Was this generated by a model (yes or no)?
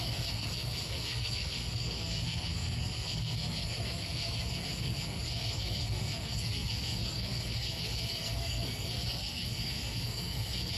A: yes